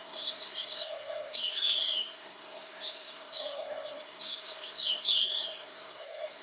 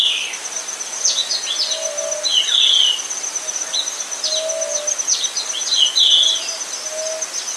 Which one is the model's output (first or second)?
first